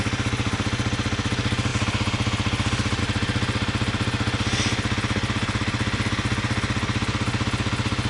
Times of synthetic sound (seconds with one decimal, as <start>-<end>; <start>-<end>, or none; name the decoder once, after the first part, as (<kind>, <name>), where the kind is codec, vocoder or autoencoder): none